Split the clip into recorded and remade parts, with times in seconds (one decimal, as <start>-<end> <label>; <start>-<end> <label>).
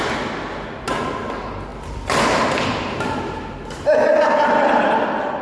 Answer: 0.0-5.4 recorded